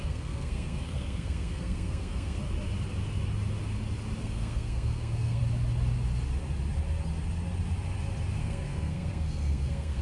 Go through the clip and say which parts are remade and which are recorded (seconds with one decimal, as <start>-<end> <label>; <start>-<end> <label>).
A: 0.0-2.4 remade; 2.4-4.2 recorded; 4.2-5.4 remade; 5.4-8.4 recorded; 8.4-10.0 remade